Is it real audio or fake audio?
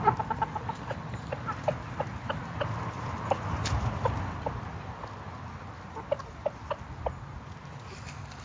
real